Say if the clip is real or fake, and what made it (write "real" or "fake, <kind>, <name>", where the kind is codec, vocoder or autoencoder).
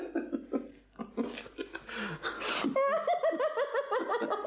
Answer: real